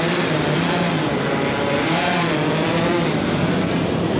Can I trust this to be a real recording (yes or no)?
yes